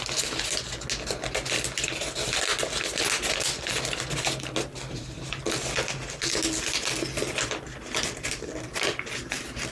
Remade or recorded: recorded